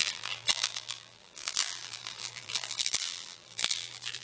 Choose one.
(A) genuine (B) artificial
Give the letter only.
B